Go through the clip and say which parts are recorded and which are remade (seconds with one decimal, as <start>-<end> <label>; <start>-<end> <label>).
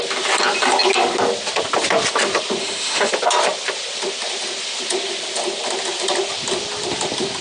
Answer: 0.0-2.6 recorded; 2.6-3.1 remade; 3.1-7.4 recorded